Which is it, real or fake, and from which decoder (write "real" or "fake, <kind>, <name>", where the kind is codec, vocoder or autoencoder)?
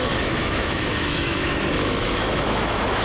fake, autoencoder, DAC-VAE